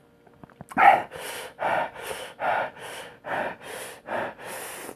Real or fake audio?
real